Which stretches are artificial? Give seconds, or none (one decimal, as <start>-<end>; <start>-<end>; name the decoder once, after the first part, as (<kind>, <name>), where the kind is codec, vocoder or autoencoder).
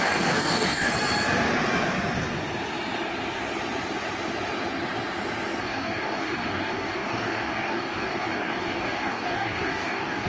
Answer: 0.0-0.9 (codec, DAC); 5.6-10.3